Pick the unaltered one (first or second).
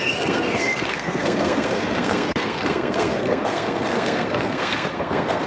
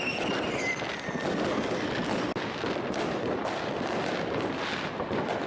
second